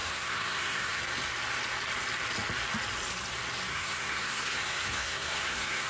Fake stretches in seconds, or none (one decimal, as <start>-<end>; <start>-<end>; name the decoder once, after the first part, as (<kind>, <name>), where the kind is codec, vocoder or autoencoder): 0.0-1.0 (codec, SNAC); 3.7-5.9